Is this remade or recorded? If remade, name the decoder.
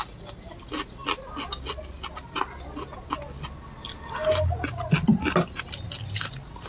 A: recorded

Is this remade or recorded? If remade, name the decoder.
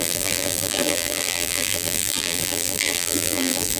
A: remade, vocoder, BigVGAN v2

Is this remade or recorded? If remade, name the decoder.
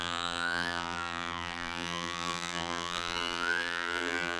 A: remade, vocoder, BigVGAN v2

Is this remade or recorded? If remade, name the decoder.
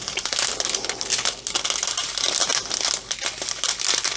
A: recorded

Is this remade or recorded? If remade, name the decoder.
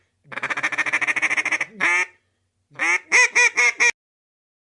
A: recorded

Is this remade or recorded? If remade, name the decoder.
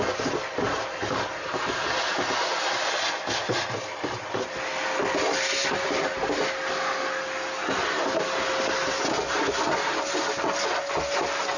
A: recorded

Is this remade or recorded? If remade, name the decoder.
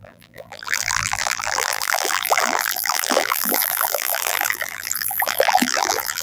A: remade, vocoder, BigVGAN v2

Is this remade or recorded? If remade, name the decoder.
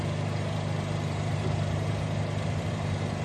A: remade, vocoder, BigVGAN v2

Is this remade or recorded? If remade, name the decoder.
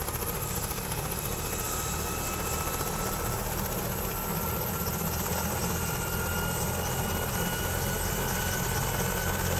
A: recorded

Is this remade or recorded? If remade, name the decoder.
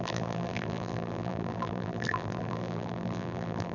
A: remade, vocoder, BigVGAN v2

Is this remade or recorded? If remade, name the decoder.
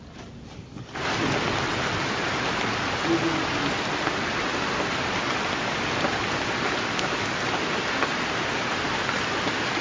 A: remade, vocoder, BigVGAN v2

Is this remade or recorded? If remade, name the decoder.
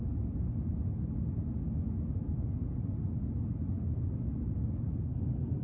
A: recorded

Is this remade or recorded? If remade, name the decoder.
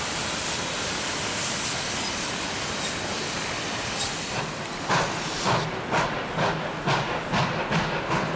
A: recorded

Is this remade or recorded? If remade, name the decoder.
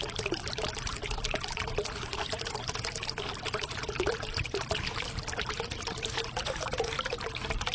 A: remade, vocoder, BigVGAN v2